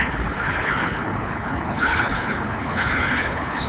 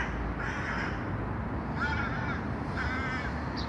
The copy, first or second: first